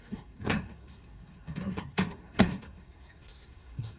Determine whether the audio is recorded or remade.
remade